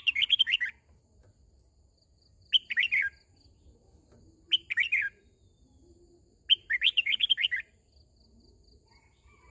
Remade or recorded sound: recorded